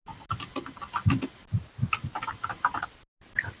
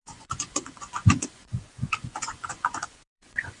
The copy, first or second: second